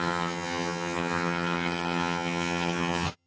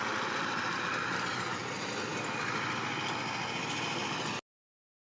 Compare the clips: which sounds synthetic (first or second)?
first